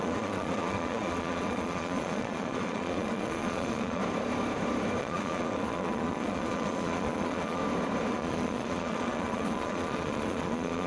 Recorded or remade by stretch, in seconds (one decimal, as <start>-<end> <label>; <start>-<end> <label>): 0.0-4.0 remade; 4.0-5.0 recorded; 5.0-7.6 remade; 7.6-8.1 recorded; 8.1-10.9 remade